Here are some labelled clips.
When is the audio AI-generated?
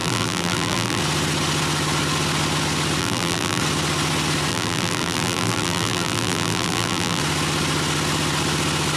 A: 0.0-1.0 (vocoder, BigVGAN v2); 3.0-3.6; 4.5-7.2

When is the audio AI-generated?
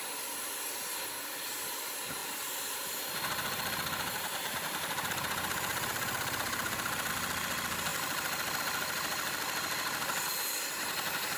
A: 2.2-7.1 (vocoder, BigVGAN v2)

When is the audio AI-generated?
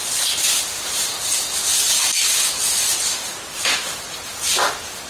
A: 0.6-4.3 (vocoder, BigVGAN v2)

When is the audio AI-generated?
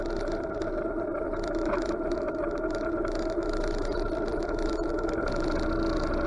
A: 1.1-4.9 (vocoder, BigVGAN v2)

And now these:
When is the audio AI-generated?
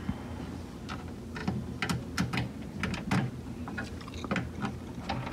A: none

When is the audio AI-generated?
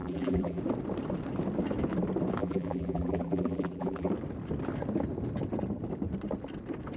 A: 0.0-0.6 (vocoder, BigVGAN v2); 2.4-4.1